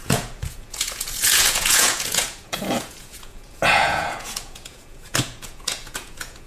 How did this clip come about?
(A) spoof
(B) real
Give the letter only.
A